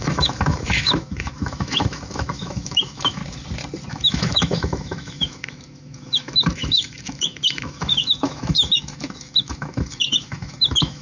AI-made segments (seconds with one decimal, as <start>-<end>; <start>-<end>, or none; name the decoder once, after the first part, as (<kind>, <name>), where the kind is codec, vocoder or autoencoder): 0.0-3.2 (autoencoder, DAC-VAE); 3.9-11.0

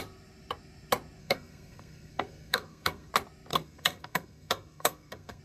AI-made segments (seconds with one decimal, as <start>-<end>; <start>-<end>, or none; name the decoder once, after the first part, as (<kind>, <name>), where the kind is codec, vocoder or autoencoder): 1.2-3.1 (codec, SNAC); 3.5-5.4

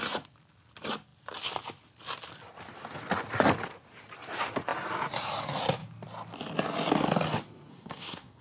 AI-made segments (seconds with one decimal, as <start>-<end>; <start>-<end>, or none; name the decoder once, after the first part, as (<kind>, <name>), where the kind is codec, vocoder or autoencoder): 7.7-8.4 (codec, SNAC)

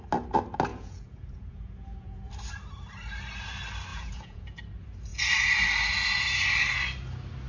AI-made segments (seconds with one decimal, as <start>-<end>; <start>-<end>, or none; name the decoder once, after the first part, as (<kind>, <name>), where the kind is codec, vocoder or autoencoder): 0.7-2.3 (vocoder, Vocos); 3.9-4.6

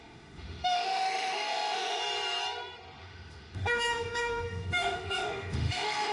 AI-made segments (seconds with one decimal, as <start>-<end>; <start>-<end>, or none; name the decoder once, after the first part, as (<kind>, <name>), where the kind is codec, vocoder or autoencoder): 0.0-2.0 (autoencoder, DAC-VAE); 3.0-6.1

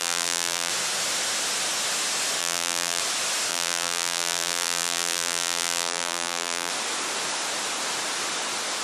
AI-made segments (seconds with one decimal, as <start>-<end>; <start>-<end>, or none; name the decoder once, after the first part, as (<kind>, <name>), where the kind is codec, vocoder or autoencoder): 0.0-0.7 (vocoder, BigVGAN v2); 2.4-3.0; 3.5-6.7

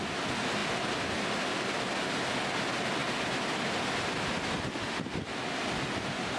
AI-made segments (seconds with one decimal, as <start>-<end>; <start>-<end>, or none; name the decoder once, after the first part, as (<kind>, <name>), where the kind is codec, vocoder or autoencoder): none

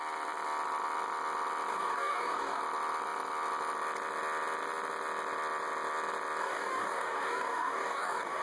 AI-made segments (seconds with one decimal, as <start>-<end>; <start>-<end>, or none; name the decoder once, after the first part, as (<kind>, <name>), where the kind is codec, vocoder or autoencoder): 1.7-2.6 (codec, DAC); 6.4-8.4